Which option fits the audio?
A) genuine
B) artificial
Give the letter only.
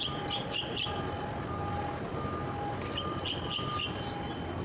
A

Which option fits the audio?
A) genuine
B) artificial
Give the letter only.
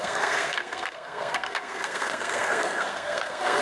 B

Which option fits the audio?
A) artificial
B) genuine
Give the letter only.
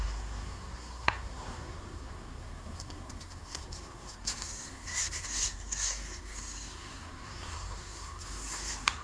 A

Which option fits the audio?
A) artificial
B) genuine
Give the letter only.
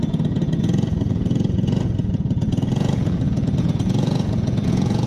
A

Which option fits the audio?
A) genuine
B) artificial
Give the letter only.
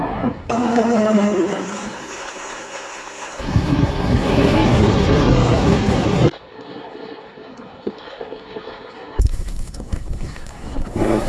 B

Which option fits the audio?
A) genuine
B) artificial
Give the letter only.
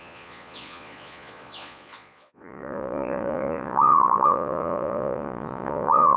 B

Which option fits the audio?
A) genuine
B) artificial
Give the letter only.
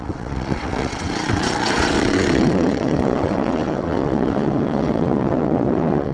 B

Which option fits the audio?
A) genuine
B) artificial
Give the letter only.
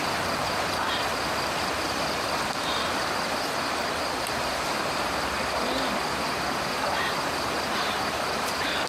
B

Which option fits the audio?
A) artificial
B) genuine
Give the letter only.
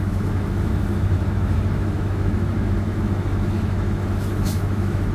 A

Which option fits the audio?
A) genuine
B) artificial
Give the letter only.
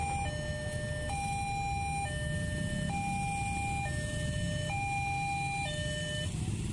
A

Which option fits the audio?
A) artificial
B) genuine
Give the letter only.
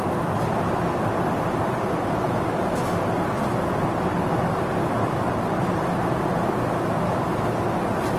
B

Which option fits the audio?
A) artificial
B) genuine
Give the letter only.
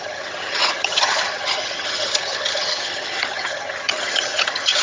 A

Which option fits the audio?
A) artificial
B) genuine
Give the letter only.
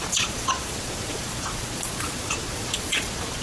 A